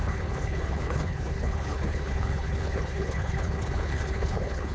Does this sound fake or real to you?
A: fake